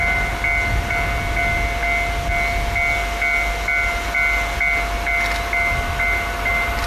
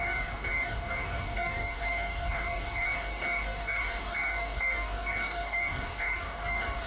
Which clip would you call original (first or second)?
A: first